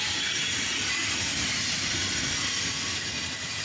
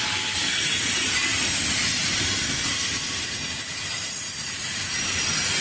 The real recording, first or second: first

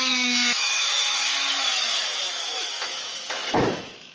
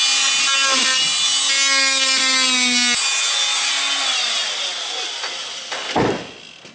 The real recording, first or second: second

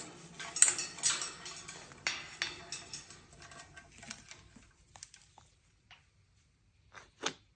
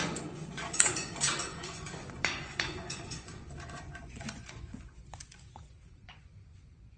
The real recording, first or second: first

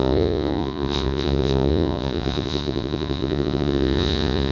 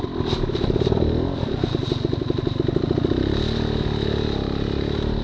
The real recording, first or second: second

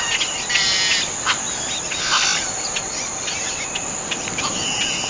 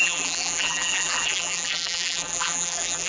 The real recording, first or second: first